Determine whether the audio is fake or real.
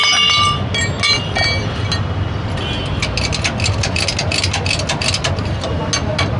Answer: real